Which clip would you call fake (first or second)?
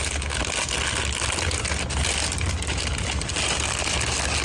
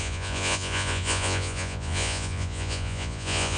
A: second